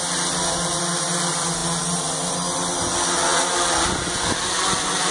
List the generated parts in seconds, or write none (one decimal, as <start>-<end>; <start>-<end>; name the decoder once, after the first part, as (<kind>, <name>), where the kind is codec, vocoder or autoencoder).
none

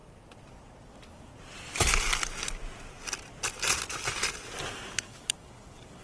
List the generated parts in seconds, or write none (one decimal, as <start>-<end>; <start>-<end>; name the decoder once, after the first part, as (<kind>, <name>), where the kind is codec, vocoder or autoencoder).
0.9-1.3 (codec, DAC); 4.9-6.0